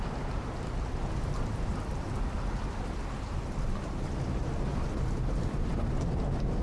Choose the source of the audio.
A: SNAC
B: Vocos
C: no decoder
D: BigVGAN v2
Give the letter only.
C